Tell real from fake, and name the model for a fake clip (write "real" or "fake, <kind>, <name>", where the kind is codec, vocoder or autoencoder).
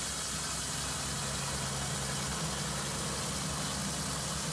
real